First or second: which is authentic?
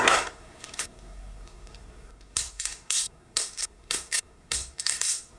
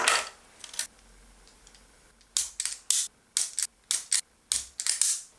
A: second